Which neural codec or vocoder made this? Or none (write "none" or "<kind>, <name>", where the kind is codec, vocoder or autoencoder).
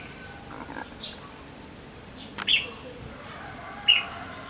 none